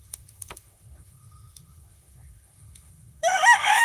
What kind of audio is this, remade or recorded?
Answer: remade